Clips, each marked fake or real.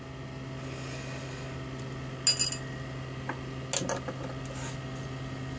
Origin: real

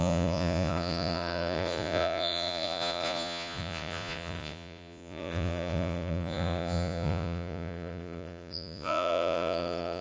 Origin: fake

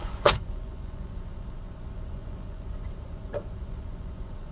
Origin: fake